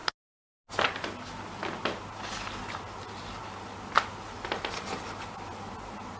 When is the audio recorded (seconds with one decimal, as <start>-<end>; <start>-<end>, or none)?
0.0-6.2